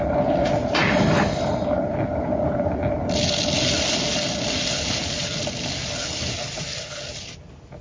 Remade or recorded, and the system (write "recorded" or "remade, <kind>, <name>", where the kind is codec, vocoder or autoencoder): recorded